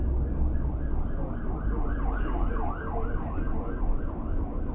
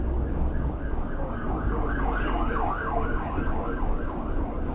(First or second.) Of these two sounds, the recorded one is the first